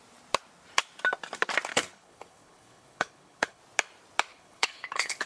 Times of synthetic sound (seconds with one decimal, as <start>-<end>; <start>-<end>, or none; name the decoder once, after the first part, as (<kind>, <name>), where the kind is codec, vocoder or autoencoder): 1.7-3.6 (codec, HILCodec); 4.3-5.3